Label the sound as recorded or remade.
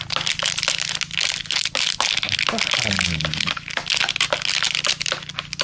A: recorded